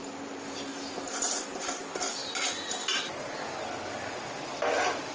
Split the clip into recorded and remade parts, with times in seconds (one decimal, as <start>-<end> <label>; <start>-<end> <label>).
0.0-5.1 recorded

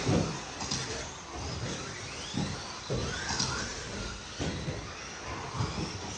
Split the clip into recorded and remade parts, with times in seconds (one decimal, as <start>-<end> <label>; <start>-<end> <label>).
0.0-6.2 recorded